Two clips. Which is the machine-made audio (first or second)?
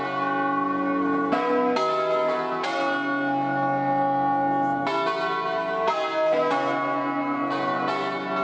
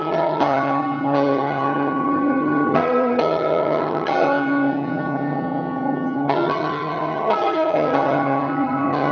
second